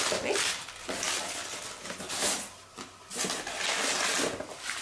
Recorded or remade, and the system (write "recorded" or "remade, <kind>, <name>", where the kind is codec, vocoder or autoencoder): recorded